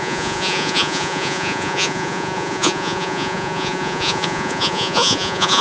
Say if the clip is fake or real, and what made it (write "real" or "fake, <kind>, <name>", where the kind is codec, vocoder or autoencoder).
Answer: fake, vocoder, Vocos